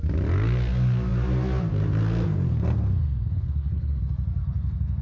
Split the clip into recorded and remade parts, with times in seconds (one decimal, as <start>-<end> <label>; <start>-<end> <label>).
0.0-2.5 recorded; 2.5-4.0 remade; 4.0-4.4 recorded; 4.4-5.0 remade

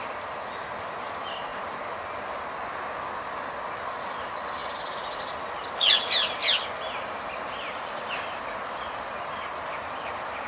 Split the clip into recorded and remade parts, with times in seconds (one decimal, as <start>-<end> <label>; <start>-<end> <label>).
0.0-10.5 recorded